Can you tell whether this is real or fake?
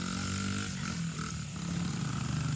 real